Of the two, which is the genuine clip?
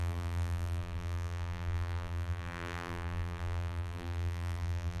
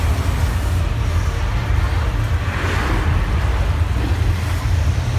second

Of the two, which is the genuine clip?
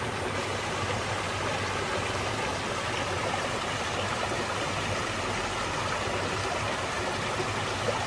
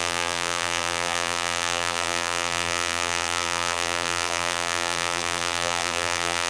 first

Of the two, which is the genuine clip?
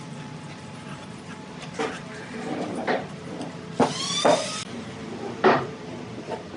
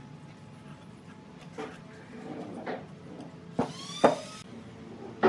second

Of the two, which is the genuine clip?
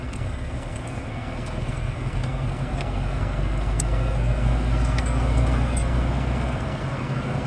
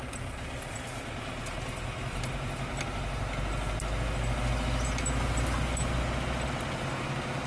second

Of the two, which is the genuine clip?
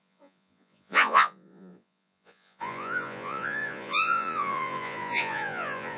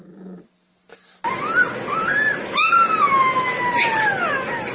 second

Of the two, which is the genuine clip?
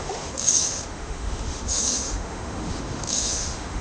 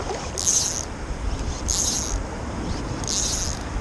second